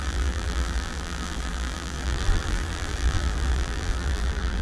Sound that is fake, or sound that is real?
fake